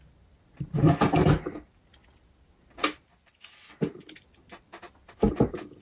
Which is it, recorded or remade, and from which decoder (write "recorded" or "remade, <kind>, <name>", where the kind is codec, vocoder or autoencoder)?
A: remade, vocoder, BigVGAN v2